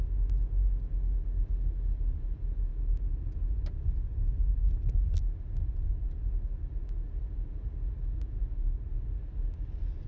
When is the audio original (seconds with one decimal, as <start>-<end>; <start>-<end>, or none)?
0.0-10.1